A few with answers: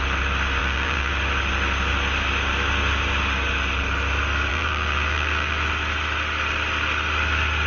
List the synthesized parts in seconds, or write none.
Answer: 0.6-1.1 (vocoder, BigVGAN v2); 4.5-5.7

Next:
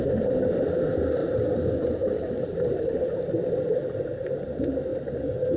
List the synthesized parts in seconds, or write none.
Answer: none

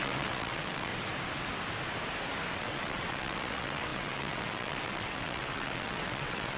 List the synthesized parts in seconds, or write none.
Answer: 0.0-0.9 (vocoder, WaveNeXt); 2.5-6.6

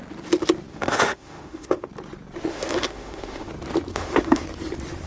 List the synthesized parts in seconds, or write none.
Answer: 0.7-1.9 (autoencoder, DAC-VAE); 2.5-3.5; 3.9-4.4